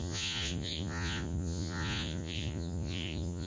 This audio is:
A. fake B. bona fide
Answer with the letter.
A